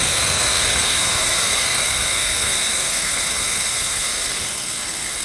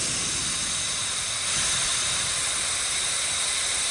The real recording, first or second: second